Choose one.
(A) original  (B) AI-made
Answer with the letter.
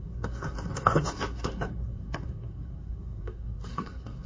B